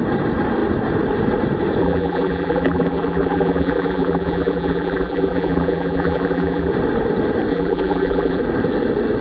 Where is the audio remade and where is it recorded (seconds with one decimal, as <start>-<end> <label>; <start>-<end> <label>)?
0.0-1.8 recorded; 1.8-6.7 remade; 6.7-7.5 recorded; 7.5-8.4 remade; 8.4-9.2 recorded